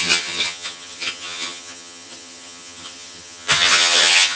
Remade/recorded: remade